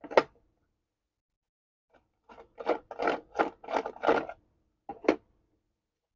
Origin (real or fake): real